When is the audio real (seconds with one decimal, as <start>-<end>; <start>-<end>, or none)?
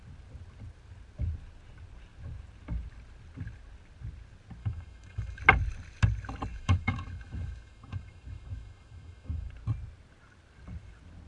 0.0-4.6; 5.4-6.5; 9.5-11.3